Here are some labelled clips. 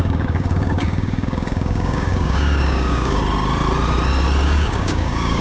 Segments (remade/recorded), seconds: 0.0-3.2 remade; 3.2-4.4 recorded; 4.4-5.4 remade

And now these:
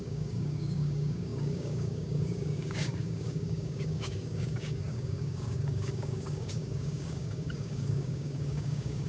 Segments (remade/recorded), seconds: 0.0-9.1 remade

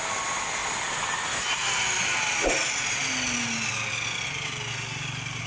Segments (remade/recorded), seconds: 0.0-5.5 recorded

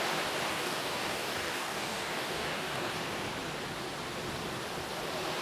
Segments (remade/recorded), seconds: 0.0-0.5 recorded; 0.5-2.9 remade; 2.9-5.4 recorded

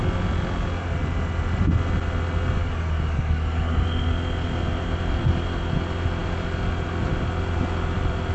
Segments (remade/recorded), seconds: 0.0-2.6 recorded; 2.6-3.7 remade; 3.7-8.3 recorded